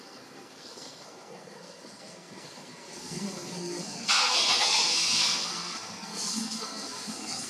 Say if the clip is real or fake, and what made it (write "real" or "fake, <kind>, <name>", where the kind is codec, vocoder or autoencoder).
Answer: fake, codec, SNAC